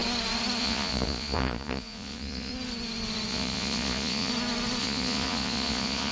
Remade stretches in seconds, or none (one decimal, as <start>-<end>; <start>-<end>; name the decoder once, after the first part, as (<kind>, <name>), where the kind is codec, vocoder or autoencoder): 0.6-2.5 (vocoder, Vocos); 3.3-4.3; 4.8-6.1